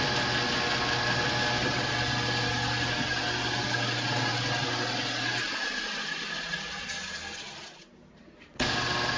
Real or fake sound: real